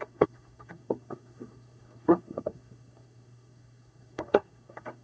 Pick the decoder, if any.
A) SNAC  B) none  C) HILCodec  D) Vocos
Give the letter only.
A